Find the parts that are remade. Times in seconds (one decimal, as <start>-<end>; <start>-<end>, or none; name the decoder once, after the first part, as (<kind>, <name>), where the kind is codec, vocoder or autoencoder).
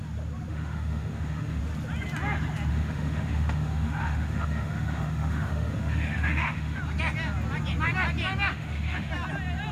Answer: 0.5-1.6 (autoencoder, DAC-VAE); 2.7-6.8; 8.5-9.1